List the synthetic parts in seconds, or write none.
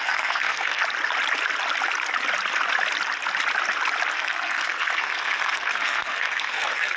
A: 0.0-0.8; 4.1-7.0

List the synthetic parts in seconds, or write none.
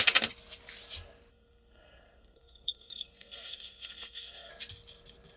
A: 1.3-4.5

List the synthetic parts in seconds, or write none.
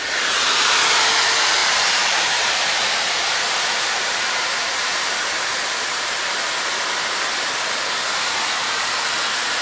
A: 1.6-6.8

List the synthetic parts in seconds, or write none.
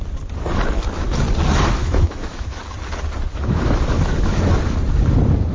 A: 1.8-2.6; 3.3-4.4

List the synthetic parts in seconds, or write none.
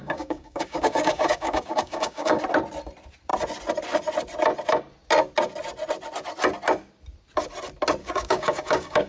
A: 0.0-2.4; 8.0-9.1